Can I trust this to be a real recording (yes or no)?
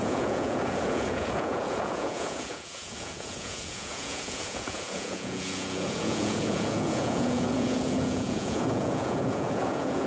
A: no